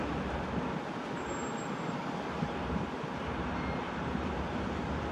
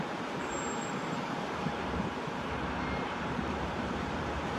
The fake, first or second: second